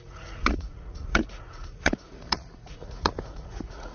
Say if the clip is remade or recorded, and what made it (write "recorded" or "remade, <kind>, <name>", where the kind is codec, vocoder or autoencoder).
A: remade, vocoder, Vocos